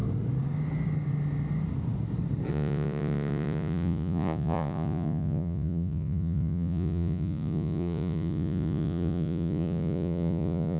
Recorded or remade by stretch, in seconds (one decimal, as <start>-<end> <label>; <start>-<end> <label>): 0.0-2.5 recorded; 2.5-10.8 remade

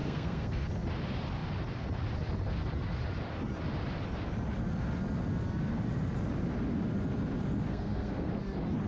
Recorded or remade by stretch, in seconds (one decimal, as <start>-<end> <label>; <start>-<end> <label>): 0.0-0.7 remade; 0.7-7.7 recorded; 7.7-8.3 remade; 8.3-8.9 recorded

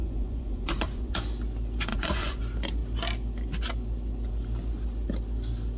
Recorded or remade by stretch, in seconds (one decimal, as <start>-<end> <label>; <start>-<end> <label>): 0.0-1.1 remade; 1.1-1.9 recorded; 1.9-2.4 remade; 2.4-5.8 recorded